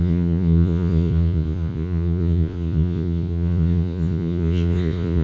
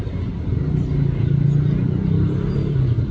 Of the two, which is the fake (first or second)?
first